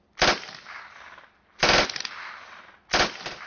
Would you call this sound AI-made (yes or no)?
no